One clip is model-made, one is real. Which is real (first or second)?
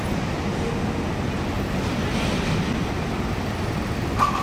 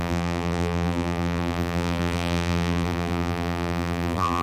first